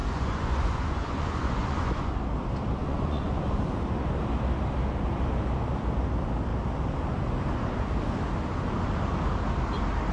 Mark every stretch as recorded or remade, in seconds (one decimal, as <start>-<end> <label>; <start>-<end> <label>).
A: 0.0-2.1 remade; 2.1-2.8 recorded; 2.8-3.6 remade; 3.6-10.1 recorded